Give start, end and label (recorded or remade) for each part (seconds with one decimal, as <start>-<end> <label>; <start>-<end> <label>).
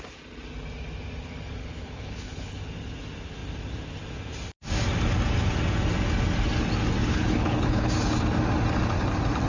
0.0-1.6 recorded; 1.6-2.6 remade; 2.6-7.0 recorded; 7.0-7.9 remade; 7.9-9.5 recorded